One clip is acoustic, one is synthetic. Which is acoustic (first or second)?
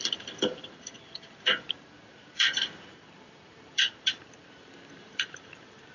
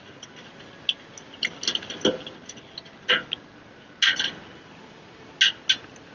second